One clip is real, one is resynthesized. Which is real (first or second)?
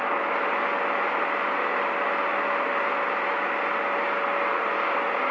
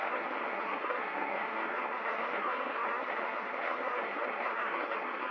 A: first